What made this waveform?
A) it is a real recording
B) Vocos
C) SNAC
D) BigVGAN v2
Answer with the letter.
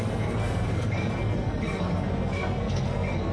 C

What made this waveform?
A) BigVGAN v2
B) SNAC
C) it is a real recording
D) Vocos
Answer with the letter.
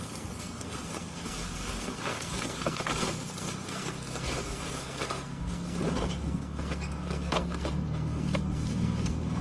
B